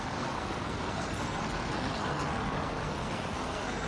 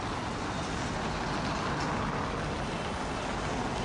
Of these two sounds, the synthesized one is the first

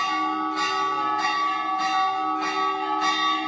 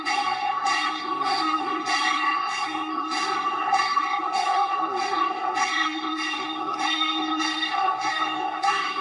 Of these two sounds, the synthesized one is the second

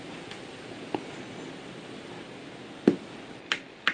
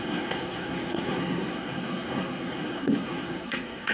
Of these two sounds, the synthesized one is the second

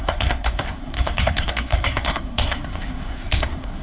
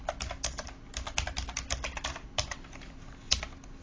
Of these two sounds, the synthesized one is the first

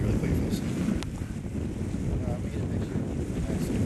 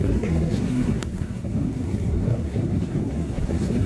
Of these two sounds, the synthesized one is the second